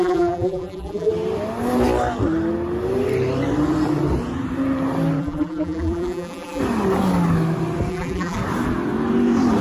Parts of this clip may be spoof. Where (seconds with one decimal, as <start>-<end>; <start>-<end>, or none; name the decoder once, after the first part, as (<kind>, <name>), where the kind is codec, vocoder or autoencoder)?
0.0-1.1 (vocoder, BigVGAN v2); 5.2-6.6; 7.9-8.4

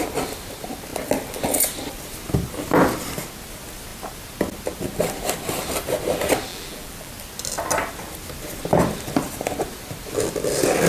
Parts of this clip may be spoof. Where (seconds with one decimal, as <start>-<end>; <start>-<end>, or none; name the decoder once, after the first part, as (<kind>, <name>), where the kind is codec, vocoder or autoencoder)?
6.5-7.1 (vocoder, BigVGAN v2)

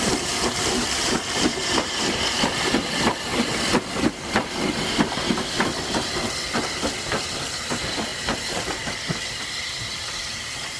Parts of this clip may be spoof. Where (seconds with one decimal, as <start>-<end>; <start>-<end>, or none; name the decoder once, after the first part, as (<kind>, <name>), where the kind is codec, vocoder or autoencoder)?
0.0-3.3 (vocoder, BigVGAN v2); 7.7-8.1; 10.1-10.8

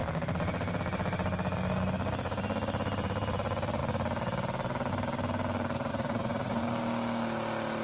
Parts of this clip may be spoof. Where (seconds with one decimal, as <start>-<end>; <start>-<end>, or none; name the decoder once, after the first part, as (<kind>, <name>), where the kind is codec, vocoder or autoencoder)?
5.9-6.6 (vocoder, Vocos)

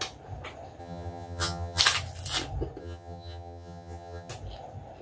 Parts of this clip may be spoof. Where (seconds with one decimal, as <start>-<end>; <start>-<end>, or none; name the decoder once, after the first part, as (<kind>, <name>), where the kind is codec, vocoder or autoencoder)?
0.8-1.8 (vocoder, HiFi-GAN); 2.8-4.3

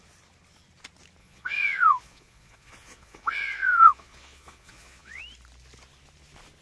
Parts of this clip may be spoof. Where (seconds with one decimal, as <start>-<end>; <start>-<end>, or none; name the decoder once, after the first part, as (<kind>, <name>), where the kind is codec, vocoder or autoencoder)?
1.2-5.2 (vocoder, Vocos)

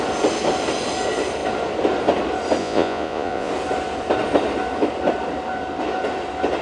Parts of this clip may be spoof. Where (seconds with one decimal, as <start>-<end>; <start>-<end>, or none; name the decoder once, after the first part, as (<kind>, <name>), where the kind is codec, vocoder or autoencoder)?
2.6-3.5 (vocoder, Vocos)

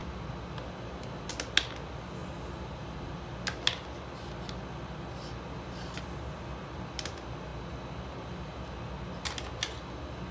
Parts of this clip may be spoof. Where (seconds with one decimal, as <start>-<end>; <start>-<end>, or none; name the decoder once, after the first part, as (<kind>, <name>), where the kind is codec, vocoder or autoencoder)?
2.2-3.2 (vocoder, BigVGAN v2)